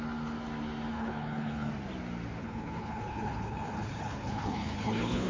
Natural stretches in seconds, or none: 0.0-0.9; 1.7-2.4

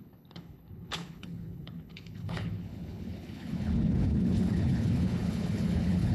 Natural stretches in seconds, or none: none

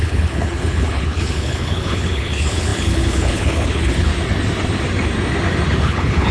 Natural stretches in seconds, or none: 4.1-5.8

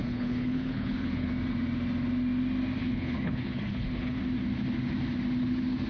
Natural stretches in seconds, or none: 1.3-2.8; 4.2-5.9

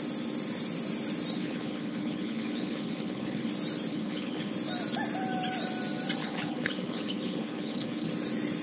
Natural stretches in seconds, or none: 0.0-1.4; 3.5-3.9; 4.5-6.2; 8.1-8.6

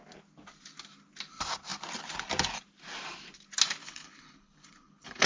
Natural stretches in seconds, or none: 0.0-3.8

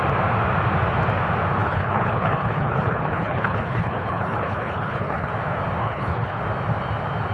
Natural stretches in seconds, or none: 0.0-1.6; 5.3-5.8; 6.4-7.3

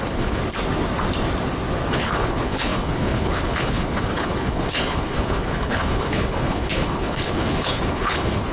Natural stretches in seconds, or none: 0.4-1.9